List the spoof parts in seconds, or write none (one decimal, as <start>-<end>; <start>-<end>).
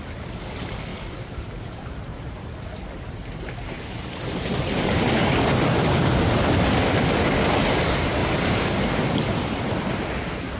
0.9-5.0; 8.2-9.9